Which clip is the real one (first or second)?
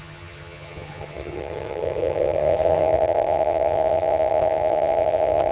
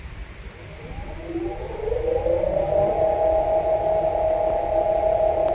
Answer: second